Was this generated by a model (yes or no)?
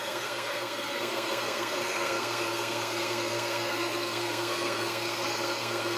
yes